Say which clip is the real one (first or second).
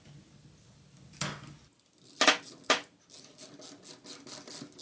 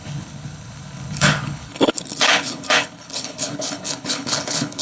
first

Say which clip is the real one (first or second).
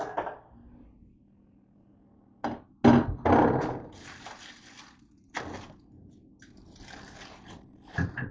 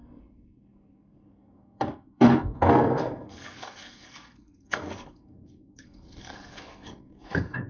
first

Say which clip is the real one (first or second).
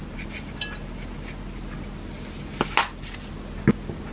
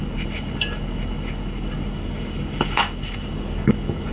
first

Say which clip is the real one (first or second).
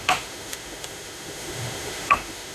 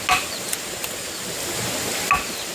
second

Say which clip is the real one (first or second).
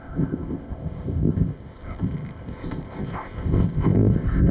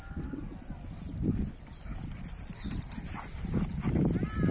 second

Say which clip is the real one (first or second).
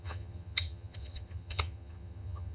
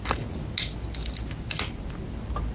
second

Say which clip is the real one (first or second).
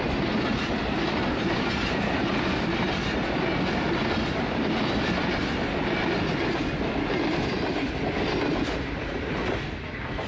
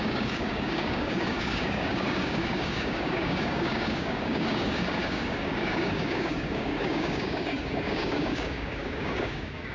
first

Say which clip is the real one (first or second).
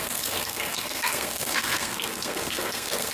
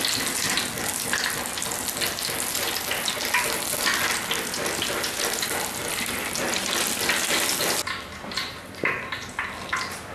second